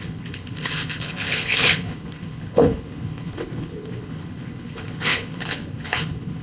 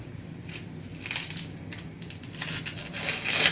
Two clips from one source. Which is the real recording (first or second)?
second